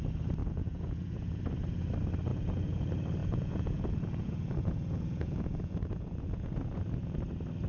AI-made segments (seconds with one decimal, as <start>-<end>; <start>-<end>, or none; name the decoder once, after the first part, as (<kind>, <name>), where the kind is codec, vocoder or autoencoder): 0.4-1.4 (vocoder, Vocos); 2.3-2.8; 3.2-7.2